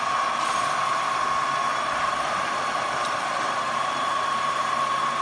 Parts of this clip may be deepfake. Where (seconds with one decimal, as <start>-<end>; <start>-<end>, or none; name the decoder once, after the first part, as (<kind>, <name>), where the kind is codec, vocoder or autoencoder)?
1.7-4.8 (vocoder, BigVGAN v2)